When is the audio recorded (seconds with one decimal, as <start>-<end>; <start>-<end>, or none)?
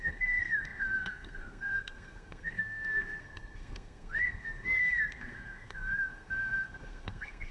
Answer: none